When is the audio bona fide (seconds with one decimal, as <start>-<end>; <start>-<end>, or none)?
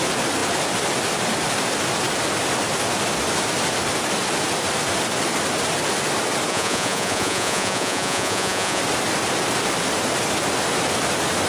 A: 0.0-6.5; 8.8-11.5